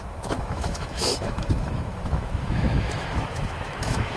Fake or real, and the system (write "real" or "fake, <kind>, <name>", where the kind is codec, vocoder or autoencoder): fake, autoencoder, DAC-VAE